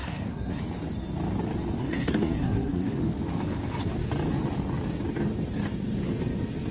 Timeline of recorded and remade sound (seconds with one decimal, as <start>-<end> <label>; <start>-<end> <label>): 0.0-0.6 remade; 0.6-1.8 recorded; 1.8-3.0 remade; 3.0-6.7 recorded